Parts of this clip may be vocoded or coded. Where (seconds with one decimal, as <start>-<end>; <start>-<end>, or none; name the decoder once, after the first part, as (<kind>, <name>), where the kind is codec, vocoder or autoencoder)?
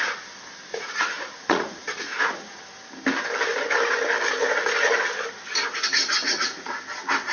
0.7-2.6 (vocoder, Vocos); 6.2-6.8